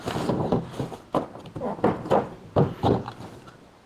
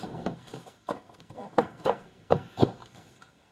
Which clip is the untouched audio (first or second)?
first